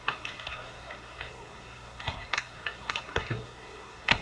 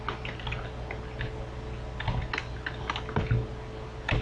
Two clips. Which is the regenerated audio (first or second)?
first